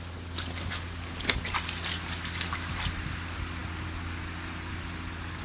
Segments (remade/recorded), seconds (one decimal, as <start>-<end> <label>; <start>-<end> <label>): 0.0-5.4 recorded